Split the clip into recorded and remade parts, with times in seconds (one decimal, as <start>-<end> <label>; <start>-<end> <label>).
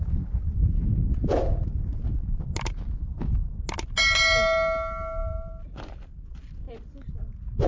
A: 0.0-5.2 recorded; 5.2-7.0 remade; 7.0-7.7 recorded